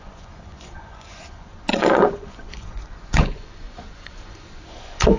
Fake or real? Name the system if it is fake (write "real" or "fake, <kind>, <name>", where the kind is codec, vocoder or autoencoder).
fake, vocoder, Vocos